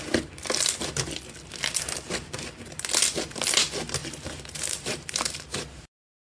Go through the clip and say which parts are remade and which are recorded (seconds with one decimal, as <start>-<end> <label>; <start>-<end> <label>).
0.0-4.0 recorded; 4.0-6.3 remade